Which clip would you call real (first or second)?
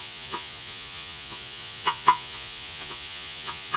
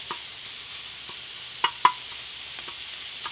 second